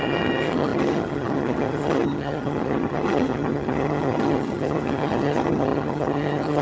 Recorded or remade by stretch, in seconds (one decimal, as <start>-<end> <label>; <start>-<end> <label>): 0.0-6.6 remade